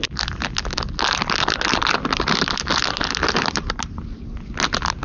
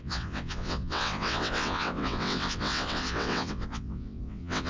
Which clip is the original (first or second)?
first